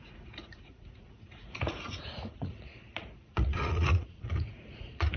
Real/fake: fake